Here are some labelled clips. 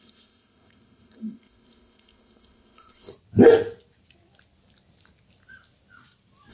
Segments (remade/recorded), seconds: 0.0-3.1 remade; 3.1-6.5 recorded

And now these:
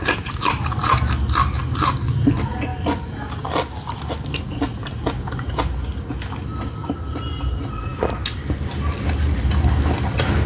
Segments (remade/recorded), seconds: 0.0-10.5 recorded

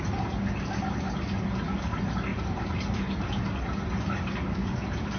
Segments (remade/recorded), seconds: 0.0-5.2 recorded

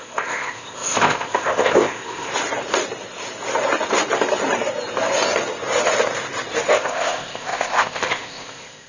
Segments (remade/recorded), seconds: 0.0-2.3 remade; 2.3-6.7 recorded; 6.7-8.9 remade